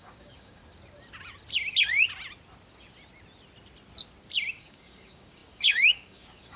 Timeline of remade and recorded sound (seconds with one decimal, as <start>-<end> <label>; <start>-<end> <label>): 0.0-0.6 remade; 0.6-4.6 recorded; 4.6-6.6 remade